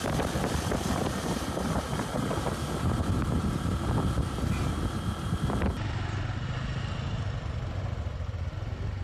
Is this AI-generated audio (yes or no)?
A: no